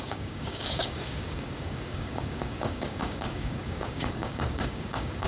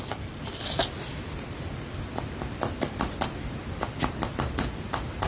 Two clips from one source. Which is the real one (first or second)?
second